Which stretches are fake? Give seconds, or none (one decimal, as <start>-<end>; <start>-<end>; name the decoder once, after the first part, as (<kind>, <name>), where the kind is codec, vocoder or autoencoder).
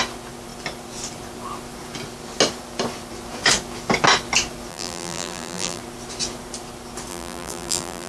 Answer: 4.7-5.8 (vocoder, BigVGAN v2); 7.1-8.1